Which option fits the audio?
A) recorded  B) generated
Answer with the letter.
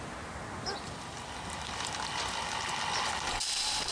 A